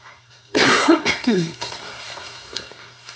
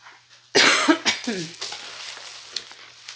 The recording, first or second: second